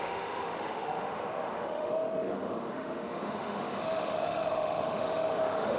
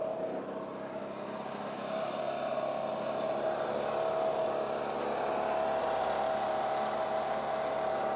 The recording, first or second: second